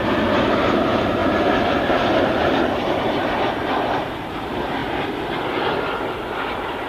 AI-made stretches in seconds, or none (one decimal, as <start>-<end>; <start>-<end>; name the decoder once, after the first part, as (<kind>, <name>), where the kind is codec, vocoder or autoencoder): 0.0-4.8 (vocoder, BigVGAN v2); 6.5-6.9